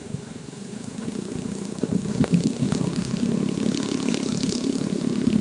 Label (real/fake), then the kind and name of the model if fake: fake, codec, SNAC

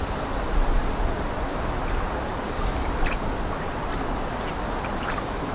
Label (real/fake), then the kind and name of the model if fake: real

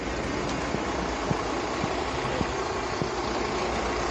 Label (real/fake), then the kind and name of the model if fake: real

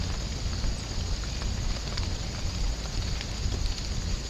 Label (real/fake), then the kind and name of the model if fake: real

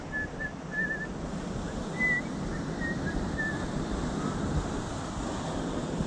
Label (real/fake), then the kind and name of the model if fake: real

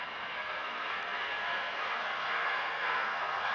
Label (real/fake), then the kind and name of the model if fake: fake, codec, SNAC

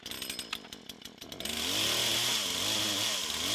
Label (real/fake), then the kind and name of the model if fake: real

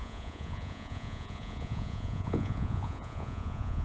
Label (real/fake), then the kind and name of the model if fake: fake, vocoder, Vocos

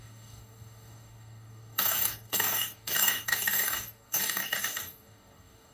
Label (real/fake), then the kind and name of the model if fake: fake, codec, DAC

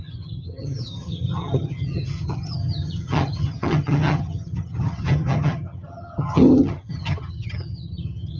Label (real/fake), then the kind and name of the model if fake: fake, vocoder, HiFi-GAN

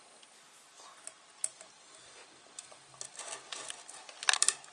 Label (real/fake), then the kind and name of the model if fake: real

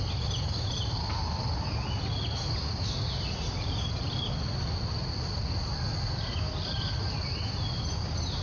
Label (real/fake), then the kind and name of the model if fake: real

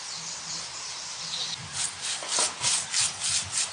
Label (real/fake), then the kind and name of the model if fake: real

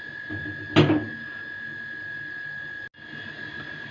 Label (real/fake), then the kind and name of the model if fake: real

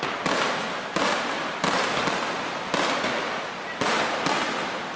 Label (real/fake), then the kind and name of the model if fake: real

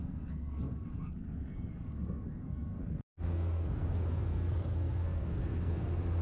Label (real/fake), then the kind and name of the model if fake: fake, codec, SNAC